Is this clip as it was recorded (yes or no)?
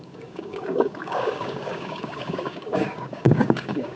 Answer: no